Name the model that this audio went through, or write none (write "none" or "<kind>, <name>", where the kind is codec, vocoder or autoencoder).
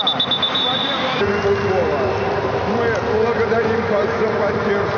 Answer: none